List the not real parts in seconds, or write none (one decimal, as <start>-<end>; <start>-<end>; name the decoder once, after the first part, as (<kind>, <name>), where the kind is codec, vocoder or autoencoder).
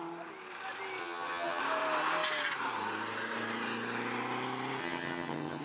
1.0-1.6 (vocoder, HiFi-GAN); 4.8-5.6